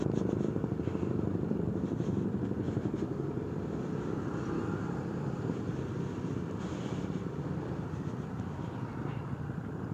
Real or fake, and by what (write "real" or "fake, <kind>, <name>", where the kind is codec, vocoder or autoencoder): fake, vocoder, BigVGAN v2